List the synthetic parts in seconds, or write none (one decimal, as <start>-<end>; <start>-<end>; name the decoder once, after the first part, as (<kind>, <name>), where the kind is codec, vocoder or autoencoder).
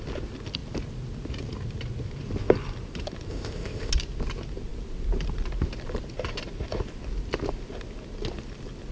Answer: 3.3-3.9 (codec, ZipCodec)